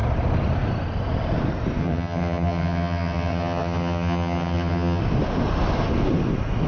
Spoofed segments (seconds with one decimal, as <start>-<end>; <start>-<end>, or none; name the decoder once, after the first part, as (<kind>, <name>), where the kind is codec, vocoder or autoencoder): 1.8-5.0 (vocoder, HiFi-GAN)